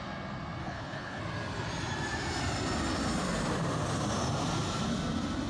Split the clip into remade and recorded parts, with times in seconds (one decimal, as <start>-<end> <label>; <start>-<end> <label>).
0.0-0.6 recorded; 0.6-1.2 remade; 1.2-5.5 recorded